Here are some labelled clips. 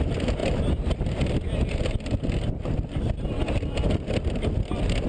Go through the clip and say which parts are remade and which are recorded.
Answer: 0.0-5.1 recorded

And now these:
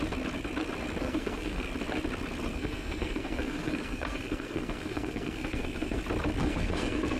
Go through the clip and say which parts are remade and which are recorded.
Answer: 0.0-1.0 recorded; 1.0-1.7 remade; 1.7-2.5 recorded; 2.5-6.0 remade; 6.0-6.4 recorded; 6.4-7.2 remade

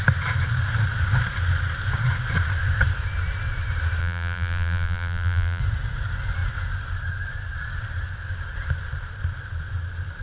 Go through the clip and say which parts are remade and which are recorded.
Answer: 0.0-4.0 recorded; 4.0-5.6 remade; 5.6-10.2 recorded

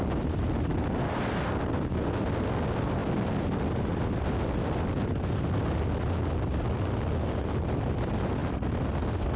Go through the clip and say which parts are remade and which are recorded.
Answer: 0.0-9.4 recorded

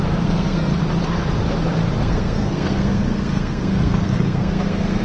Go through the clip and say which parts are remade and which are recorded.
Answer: 0.0-0.7 remade; 0.7-2.0 recorded; 2.0-5.0 remade

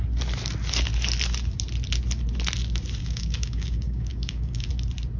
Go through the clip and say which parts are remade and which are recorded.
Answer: 0.0-3.0 recorded; 3.0-4.7 remade; 4.7-5.2 recorded

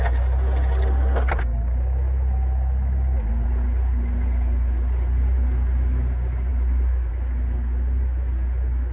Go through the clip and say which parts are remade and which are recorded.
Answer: 0.0-8.9 recorded